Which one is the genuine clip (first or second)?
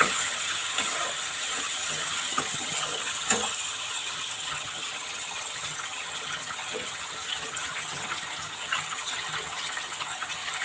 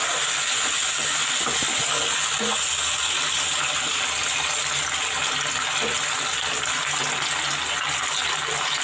second